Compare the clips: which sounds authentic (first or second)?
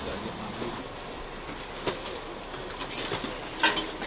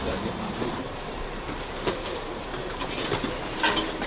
first